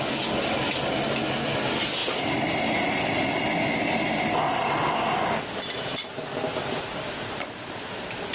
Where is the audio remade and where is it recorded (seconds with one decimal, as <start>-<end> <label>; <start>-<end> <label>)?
0.0-6.5 recorded; 6.5-8.3 remade